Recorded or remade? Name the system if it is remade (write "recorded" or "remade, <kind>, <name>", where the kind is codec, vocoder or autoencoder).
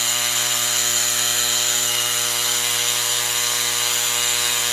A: remade, codec, SNAC